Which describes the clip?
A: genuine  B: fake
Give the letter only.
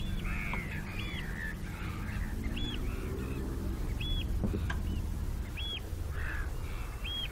A